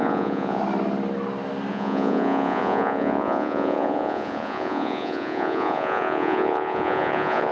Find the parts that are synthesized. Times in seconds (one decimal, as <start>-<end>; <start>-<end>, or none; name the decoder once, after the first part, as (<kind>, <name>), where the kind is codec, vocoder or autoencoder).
0.0-0.6 (vocoder, Vocos); 1.7-7.5